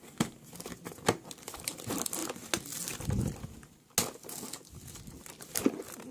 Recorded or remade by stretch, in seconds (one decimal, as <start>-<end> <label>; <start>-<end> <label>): 0.0-6.1 recorded